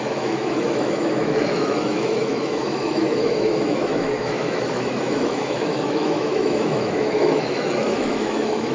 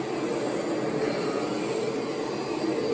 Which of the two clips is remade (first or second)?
first